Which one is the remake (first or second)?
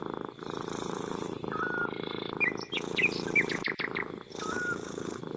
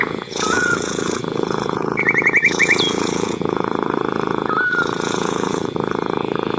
second